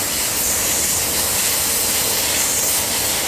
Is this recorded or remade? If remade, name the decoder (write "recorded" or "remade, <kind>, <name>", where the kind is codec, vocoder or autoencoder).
recorded